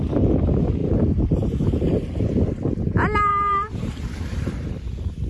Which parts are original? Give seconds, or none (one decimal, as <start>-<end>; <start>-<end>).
0.0-0.8; 2.2-3.3; 4.7-5.3